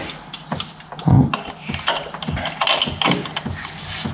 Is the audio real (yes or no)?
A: yes